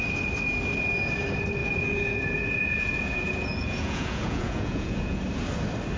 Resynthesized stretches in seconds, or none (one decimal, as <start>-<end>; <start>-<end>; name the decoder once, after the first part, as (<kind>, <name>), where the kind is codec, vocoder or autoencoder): 1.6-5.2 (vocoder, Vocos)